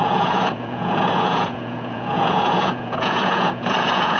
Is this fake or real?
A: fake